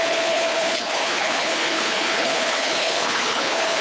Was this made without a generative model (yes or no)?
no